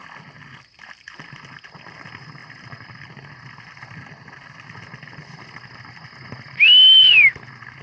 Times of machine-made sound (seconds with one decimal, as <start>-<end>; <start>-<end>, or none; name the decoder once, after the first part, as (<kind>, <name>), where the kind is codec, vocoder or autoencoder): none